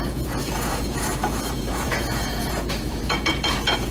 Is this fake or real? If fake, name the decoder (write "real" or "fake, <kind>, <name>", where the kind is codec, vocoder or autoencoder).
fake, vocoder, Vocos